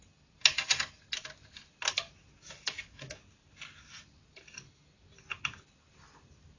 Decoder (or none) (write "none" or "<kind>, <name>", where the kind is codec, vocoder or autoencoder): none